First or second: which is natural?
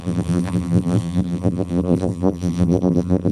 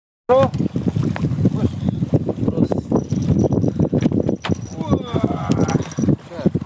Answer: second